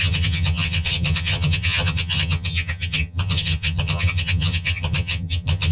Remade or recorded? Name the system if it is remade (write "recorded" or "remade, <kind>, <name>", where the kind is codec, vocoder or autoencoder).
remade, vocoder, HiFi-GAN